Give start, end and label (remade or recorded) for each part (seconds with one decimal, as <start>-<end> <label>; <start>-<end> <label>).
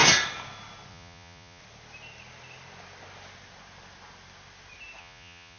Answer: 0.0-0.9 recorded; 0.9-1.6 remade; 1.6-5.0 recorded; 5.0-5.6 remade